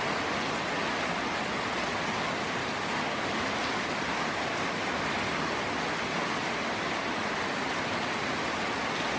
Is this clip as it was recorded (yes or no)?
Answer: yes